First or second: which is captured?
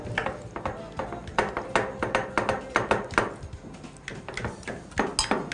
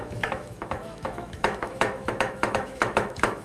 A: first